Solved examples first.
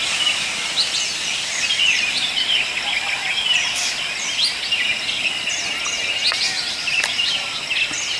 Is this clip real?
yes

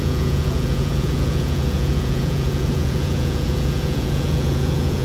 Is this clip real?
no